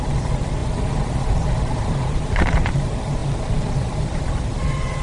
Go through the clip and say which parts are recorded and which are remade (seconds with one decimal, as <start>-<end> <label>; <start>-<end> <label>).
0.0-3.2 remade; 3.2-3.8 recorded; 3.8-5.0 remade